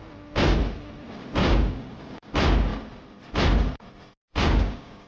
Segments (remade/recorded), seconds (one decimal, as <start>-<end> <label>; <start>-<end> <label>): 0.0-1.4 recorded; 1.4-2.3 remade; 2.3-4.4 recorded; 4.4-5.1 remade